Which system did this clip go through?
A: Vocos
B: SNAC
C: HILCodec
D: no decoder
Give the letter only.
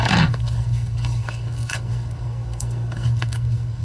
B